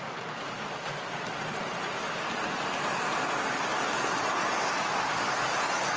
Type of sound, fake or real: real